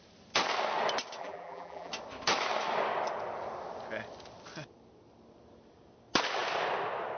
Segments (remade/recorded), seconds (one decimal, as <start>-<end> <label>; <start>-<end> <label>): 0.0-1.2 recorded; 1.2-1.9 remade; 1.9-7.2 recorded

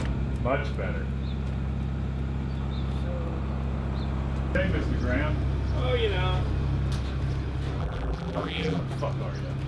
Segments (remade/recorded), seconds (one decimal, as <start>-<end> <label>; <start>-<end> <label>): 0.0-7.8 recorded; 7.8-8.8 remade; 8.8-9.7 recorded

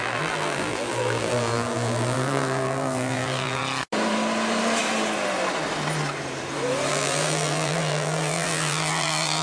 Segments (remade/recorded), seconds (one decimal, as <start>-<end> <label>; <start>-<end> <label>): 0.0-3.6 remade; 3.6-6.9 recorded; 6.9-9.4 remade

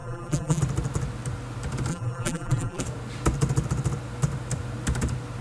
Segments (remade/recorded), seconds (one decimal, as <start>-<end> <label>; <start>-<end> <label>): 0.0-0.6 remade; 0.6-1.9 recorded; 1.9-2.8 remade; 2.8-5.4 recorded

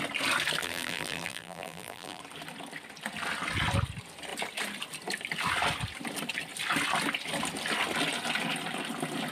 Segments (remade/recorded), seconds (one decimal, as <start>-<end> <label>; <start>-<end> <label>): 0.0-0.6 recorded; 0.6-2.2 remade; 2.2-9.3 recorded

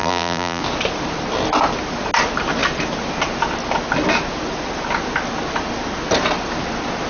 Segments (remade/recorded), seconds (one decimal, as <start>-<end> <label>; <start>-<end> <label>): 0.0-0.6 remade; 0.6-7.1 recorded

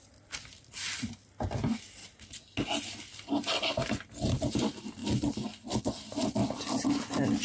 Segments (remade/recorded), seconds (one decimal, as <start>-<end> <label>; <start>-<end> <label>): 0.0-2.0 remade; 2.0-3.3 recorded; 3.3-5.0 remade; 5.0-5.9 recorded; 5.9-6.4 remade; 6.4-7.4 recorded